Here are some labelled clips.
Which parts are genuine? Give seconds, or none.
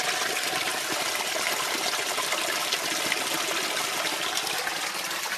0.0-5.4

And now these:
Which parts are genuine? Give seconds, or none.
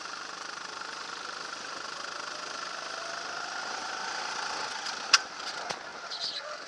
0.0-6.7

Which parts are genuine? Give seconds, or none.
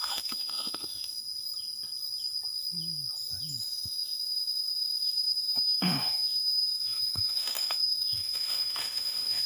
1.2-3.6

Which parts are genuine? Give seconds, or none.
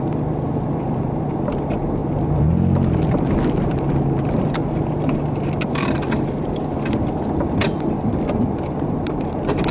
0.0-9.7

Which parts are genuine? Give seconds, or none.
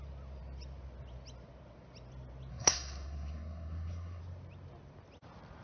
0.0-2.5; 4.2-5.6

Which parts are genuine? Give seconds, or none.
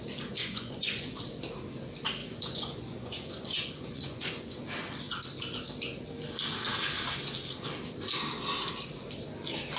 0.0-0.4; 1.2-2.2; 4.5-9.8